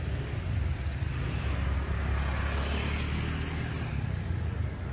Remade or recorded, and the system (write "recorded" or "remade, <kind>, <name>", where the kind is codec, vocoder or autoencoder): recorded